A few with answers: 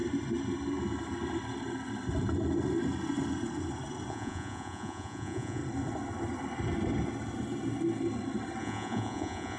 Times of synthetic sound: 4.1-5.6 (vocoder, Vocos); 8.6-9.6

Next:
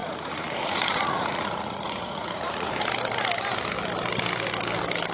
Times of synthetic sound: 0.0-2.8 (vocoder, Vocos)

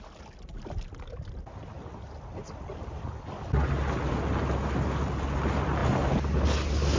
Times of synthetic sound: none

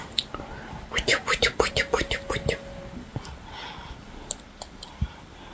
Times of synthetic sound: none

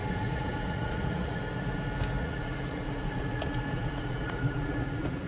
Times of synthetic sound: 0.0-1.4 (vocoder, Vocos); 2.2-5.3

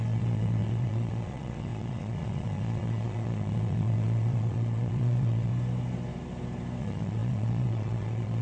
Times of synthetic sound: 0.0-5.5 (vocoder, Vocos); 6.8-8.4